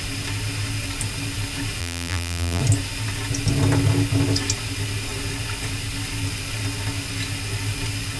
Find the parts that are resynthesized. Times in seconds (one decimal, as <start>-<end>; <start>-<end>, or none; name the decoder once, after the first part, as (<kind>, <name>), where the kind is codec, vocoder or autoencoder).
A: 1.8-2.6 (vocoder, BigVGAN v2)